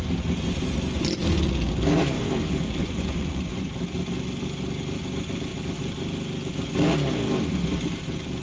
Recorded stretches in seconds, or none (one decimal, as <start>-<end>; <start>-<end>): 0.0-2.8; 3.7-8.4